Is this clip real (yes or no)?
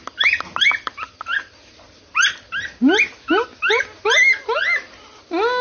yes